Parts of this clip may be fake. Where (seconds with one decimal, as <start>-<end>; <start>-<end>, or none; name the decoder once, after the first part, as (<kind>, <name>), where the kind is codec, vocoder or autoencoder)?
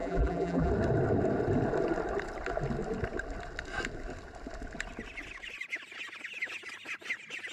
0.0-0.7 (vocoder, BigVGAN v2)